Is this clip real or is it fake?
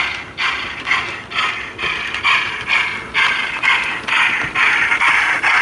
real